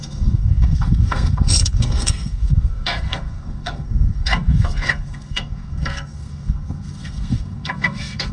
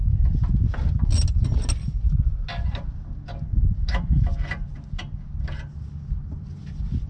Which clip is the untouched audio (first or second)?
second